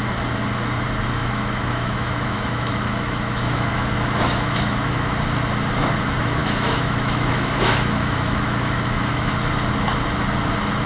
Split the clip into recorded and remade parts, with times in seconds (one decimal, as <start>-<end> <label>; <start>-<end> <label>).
0.0-1.2 recorded; 1.2-5.1 remade; 5.1-6.4 recorded; 6.4-9.3 remade; 9.3-10.9 recorded